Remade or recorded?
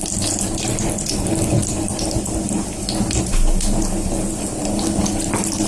recorded